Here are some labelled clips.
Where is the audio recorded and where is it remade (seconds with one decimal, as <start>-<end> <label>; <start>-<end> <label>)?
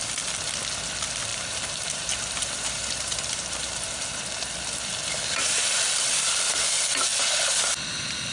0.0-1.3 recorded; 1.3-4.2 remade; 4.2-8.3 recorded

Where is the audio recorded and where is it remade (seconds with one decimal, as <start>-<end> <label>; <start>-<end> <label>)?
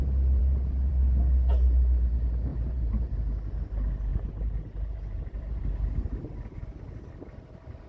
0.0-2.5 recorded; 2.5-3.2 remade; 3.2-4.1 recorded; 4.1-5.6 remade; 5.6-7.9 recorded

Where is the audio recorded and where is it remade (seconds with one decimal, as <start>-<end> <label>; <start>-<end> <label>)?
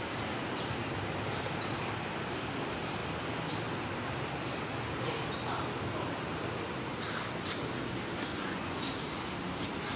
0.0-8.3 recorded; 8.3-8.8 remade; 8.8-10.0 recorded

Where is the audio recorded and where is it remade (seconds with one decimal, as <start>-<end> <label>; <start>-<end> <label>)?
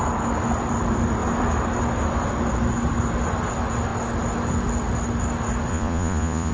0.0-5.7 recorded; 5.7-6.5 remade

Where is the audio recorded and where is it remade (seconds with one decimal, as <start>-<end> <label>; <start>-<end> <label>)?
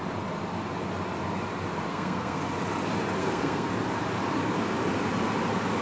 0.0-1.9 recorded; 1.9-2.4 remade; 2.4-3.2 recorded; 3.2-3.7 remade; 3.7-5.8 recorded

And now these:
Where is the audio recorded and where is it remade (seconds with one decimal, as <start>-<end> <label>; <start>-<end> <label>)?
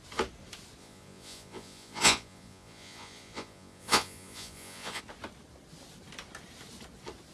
0.0-0.8 recorded; 0.8-5.0 remade; 5.0-7.3 recorded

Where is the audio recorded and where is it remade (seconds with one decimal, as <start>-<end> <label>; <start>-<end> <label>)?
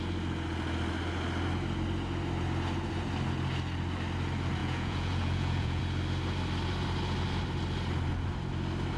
0.0-4.6 recorded; 4.6-5.8 remade; 5.8-9.0 recorded